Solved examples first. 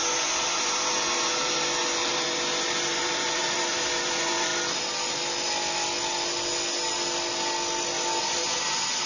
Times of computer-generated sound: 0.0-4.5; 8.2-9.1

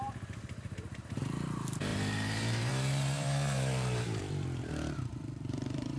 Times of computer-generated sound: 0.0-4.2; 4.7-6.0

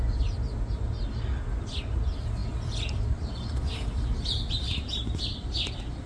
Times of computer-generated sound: 2.4-6.1

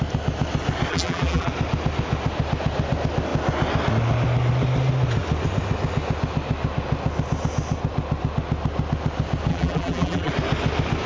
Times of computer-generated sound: 0.9-1.5; 9.5-10.3

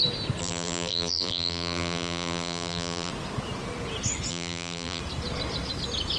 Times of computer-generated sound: 0.4-3.1; 4.3-5.0